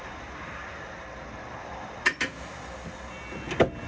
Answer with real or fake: real